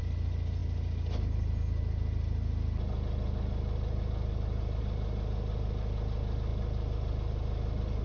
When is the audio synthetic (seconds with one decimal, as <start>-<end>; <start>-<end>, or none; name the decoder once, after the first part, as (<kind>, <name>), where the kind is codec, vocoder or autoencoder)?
none